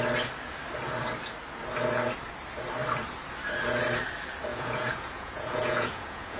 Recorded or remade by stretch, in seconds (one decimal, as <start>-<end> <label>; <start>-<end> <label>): 0.0-4.5 recorded; 4.5-6.4 remade